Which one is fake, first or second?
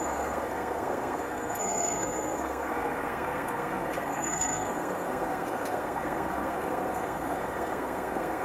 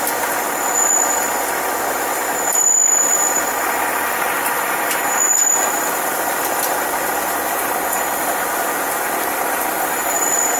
first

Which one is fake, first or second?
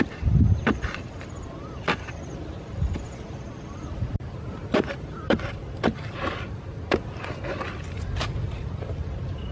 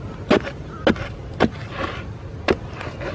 first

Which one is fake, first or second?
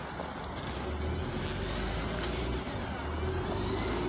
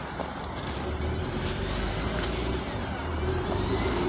second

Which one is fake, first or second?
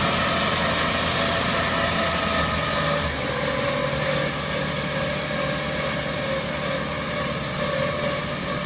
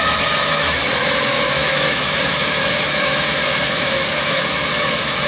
second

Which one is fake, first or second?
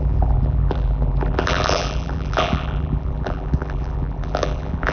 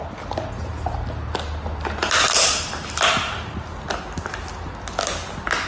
first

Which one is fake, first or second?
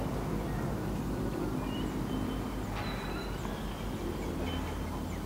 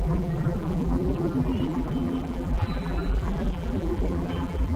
second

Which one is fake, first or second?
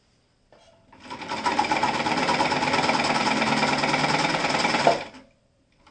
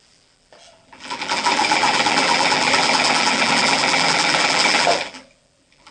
second